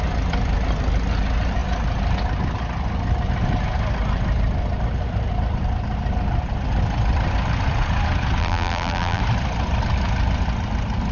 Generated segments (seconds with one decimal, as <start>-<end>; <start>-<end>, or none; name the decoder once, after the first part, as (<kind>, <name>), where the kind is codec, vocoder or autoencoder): 8.4-9.2 (vocoder, BigVGAN v2)